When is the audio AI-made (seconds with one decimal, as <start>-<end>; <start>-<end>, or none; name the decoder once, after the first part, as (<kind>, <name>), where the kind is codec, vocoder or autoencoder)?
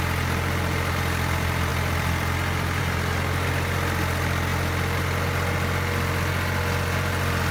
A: none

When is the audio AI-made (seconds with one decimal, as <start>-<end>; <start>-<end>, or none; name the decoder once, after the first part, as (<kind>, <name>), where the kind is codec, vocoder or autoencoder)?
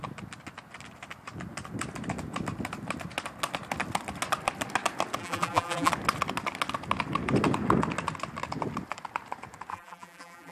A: 5.2-5.9 (vocoder, BigVGAN v2); 9.7-10.5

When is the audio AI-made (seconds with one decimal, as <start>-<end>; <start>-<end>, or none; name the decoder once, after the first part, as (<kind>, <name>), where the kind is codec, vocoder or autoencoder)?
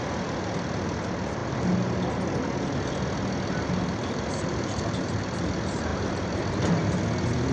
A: 5.9-7.0 (vocoder, BigVGAN v2)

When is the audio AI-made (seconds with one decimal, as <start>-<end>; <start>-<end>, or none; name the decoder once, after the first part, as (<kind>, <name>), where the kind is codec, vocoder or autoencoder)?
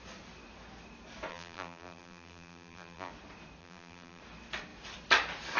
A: 1.3-3.1 (vocoder, BigVGAN v2); 3.6-4.2